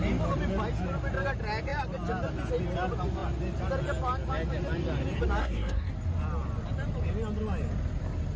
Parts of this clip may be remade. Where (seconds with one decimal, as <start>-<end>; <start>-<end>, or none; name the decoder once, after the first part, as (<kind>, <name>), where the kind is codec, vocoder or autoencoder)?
5.4-5.9 (codec, SNAC)